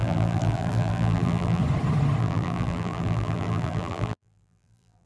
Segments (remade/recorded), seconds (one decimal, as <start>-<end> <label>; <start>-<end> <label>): 0.0-1.6 remade; 1.6-2.2 recorded; 2.2-5.1 remade